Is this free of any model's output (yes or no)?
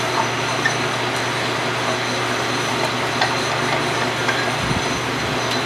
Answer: yes